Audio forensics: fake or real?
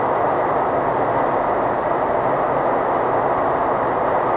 real